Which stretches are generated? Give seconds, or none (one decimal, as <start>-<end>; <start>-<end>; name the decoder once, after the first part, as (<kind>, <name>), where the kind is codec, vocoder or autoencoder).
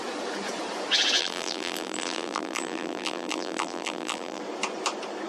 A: 1.2-4.4 (vocoder, BigVGAN v2)